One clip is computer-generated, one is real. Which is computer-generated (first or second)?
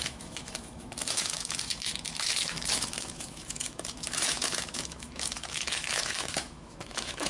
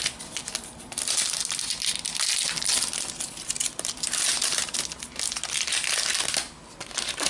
first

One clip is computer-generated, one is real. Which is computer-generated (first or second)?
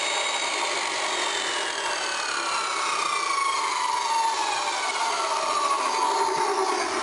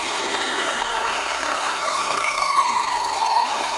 second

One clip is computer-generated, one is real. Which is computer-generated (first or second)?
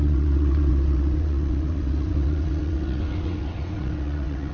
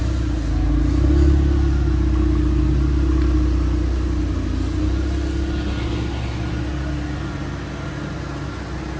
first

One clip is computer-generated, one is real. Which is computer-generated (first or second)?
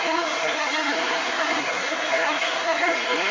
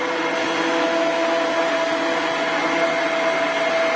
first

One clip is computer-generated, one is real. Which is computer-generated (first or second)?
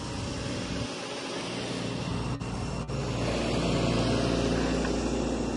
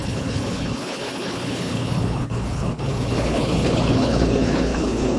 second